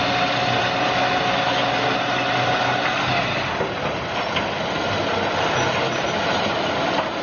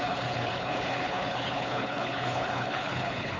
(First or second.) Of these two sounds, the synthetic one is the second